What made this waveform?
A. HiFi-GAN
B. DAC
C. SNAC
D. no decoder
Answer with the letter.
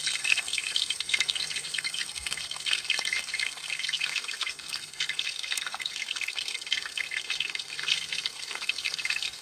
C